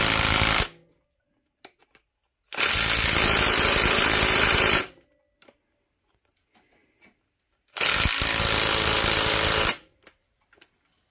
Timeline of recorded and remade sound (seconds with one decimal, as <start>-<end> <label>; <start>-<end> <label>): 0.0-11.1 recorded